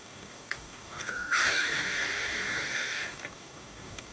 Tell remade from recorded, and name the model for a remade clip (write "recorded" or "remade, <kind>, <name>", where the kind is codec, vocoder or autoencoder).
remade, codec, DAC